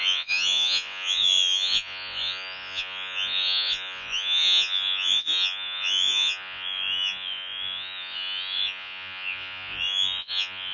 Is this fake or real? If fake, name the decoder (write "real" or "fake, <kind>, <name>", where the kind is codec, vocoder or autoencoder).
fake, vocoder, Vocos